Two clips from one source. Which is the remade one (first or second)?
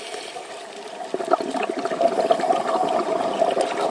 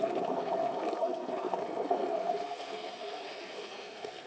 second